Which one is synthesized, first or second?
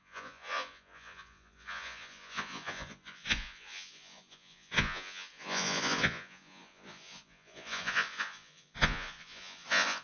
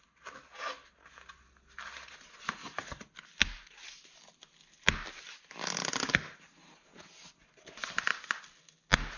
first